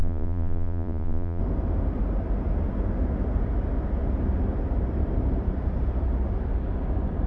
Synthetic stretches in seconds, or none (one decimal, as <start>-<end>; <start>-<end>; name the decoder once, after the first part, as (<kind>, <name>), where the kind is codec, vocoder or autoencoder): 0.0-1.4 (vocoder, Vocos)